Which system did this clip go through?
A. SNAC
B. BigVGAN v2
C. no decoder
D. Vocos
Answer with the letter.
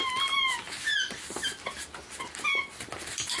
C